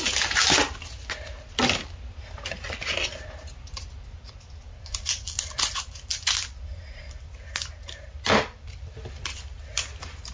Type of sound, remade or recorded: recorded